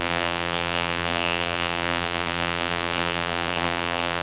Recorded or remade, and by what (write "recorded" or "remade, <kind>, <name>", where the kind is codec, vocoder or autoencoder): remade, vocoder, BigVGAN v2